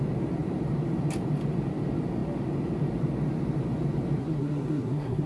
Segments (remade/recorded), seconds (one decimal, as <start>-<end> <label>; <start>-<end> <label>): 0.0-4.2 recorded; 4.2-5.3 remade